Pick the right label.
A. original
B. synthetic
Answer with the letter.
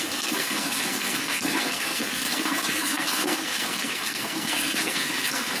B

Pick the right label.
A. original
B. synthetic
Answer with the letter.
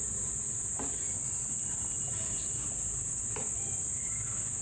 A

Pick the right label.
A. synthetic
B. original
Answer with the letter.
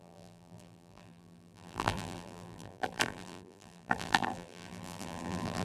A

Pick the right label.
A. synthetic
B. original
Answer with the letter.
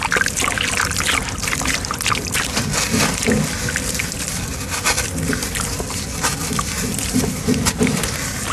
B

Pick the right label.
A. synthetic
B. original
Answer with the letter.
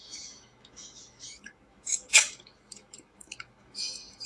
A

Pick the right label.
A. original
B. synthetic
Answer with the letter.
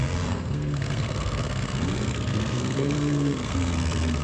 B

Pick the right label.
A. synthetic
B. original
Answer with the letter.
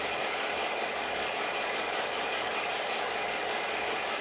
A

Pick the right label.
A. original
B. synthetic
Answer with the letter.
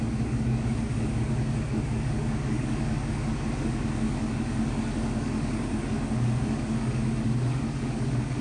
B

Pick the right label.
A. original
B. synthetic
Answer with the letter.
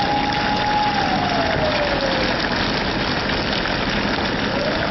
A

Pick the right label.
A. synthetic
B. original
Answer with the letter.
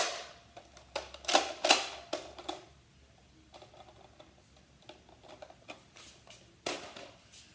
B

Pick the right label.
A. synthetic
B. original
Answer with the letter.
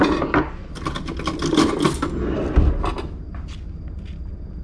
B